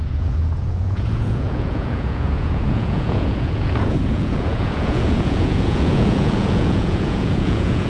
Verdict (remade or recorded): remade